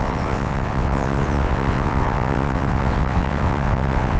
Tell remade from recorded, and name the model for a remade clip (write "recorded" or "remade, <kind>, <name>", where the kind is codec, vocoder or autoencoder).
remade, vocoder, WaveNeXt